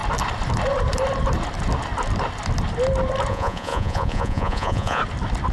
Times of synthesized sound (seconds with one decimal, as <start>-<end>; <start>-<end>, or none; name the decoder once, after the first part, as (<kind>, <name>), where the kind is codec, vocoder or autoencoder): 3.3-5.0 (vocoder, Vocos)